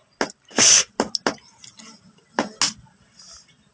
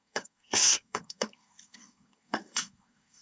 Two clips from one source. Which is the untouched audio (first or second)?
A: first